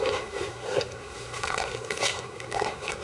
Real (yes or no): no